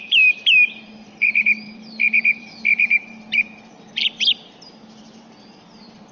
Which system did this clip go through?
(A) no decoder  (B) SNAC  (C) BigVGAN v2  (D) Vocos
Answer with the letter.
C